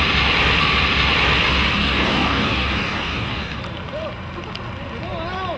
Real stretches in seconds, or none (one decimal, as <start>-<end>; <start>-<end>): 0.0-1.8; 3.6-5.6